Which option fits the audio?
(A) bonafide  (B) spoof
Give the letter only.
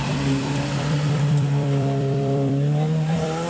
B